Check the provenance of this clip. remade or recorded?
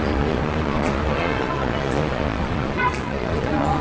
remade